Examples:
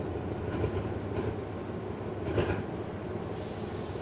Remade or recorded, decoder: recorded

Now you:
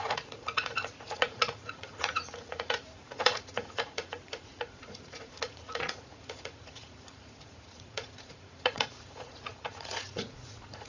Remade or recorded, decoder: remade, vocoder, Vocos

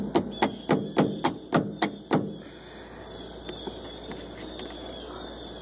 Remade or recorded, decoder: recorded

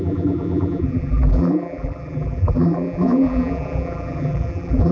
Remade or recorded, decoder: remade, vocoder, BigVGAN v2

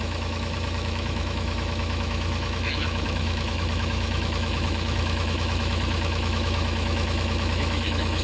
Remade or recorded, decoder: remade, autoencoder, DAC-VAE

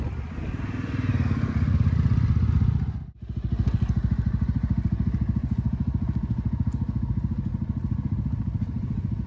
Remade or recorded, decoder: recorded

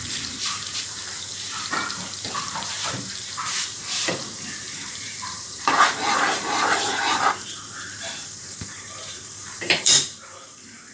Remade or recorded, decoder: remade, vocoder, BigVGAN v2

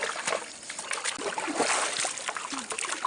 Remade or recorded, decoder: recorded